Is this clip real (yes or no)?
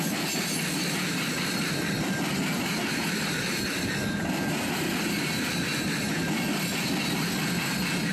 yes